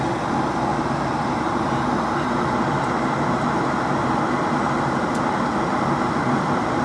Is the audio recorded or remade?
recorded